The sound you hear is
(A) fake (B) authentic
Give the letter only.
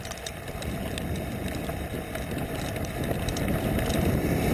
B